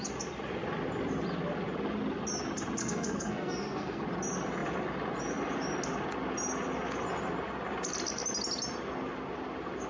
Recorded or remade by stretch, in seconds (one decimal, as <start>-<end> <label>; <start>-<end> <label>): 0.0-2.8 recorded; 2.8-4.0 remade; 4.0-9.9 recorded